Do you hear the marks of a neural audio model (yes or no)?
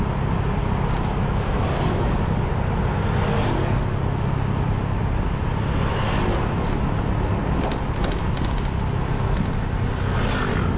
no